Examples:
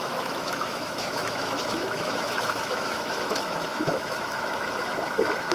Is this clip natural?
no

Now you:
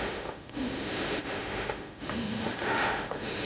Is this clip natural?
no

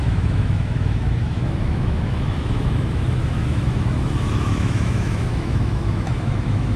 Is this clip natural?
no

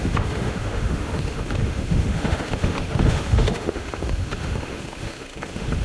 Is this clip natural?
no